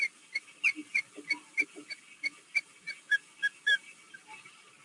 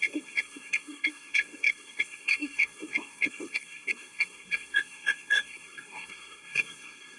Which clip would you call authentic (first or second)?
first